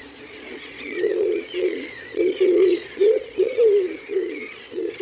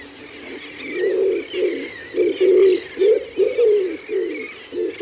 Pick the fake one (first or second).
first